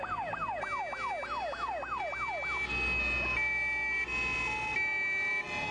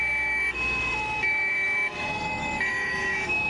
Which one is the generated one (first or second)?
second